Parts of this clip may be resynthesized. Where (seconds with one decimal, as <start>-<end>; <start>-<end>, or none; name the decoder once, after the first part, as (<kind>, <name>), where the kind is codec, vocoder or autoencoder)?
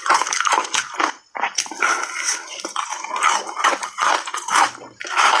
0.0-0.6 (vocoder, BigVGAN v2); 3.8-5.4